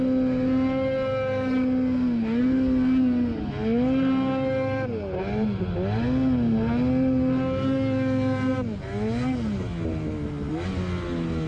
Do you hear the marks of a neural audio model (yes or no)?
no